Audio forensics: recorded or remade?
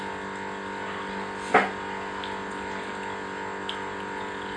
recorded